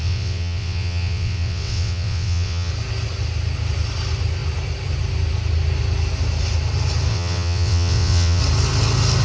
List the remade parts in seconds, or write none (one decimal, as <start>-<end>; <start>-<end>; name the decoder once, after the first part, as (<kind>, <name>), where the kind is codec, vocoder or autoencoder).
0.0-2.7 (vocoder, WaveNeXt); 7.1-8.4

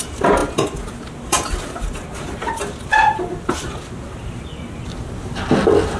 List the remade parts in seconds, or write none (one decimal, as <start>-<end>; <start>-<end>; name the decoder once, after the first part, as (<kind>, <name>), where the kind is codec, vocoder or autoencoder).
none

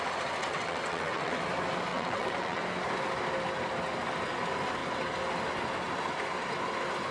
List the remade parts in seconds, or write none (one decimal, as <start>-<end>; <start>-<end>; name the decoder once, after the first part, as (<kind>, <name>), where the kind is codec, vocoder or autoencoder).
0.4-1.4 (vocoder, WaveNeXt); 1.9-2.6

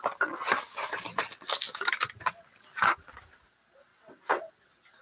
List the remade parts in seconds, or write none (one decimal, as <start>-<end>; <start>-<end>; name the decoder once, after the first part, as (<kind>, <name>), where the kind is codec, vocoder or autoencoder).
3.9-4.6 (vocoder, WaveNeXt)

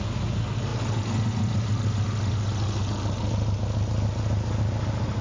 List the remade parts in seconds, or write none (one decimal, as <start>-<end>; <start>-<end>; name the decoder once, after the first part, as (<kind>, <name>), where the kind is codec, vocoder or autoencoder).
none

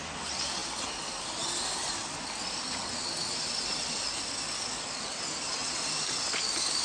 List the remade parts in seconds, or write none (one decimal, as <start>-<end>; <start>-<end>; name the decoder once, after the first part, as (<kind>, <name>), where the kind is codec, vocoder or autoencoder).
none